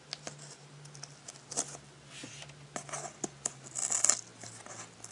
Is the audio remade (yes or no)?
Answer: no